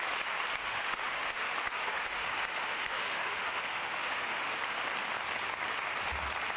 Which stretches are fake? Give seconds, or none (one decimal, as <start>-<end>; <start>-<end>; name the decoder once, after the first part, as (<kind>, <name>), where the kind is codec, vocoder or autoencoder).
0.6-4.6 (autoencoder, DAC-VAE)